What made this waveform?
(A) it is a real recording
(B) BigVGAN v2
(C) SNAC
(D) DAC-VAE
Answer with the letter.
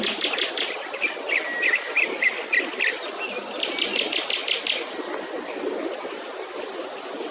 A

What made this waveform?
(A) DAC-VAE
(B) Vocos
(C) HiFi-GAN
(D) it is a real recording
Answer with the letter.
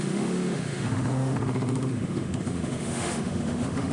A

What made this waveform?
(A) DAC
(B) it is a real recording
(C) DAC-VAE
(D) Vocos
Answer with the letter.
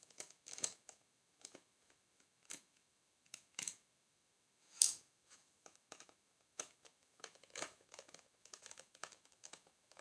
C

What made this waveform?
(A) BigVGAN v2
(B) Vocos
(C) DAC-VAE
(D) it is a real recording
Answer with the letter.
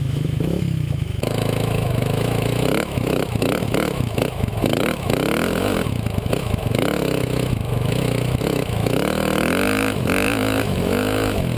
C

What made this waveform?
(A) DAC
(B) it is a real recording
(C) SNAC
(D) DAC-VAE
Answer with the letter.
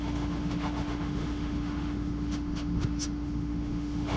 D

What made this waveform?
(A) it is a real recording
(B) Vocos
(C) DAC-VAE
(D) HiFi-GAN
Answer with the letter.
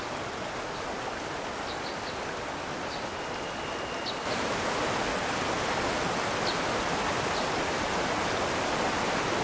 A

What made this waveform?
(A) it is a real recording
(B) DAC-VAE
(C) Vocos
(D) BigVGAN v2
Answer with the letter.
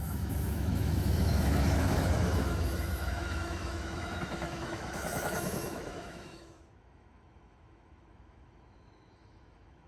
B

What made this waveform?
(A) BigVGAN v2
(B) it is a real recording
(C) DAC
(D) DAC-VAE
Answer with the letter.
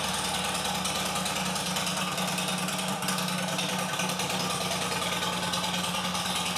B